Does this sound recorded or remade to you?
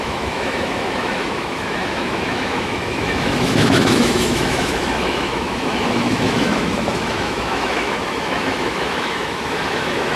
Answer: remade